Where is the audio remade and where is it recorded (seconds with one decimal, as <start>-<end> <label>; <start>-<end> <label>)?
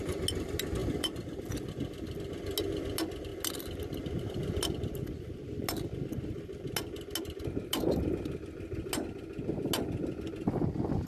0.0-11.1 recorded